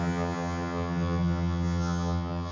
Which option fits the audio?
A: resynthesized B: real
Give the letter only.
A